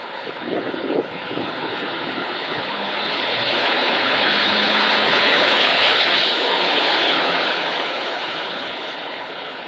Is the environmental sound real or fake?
fake